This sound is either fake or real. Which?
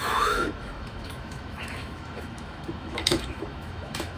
fake